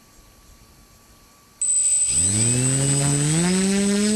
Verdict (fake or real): real